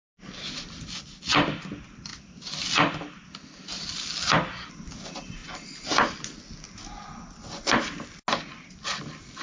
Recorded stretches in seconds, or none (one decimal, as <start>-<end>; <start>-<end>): 0.0-9.4